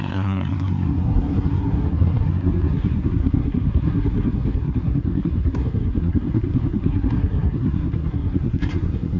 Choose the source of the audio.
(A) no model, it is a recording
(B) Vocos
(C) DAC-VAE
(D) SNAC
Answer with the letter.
D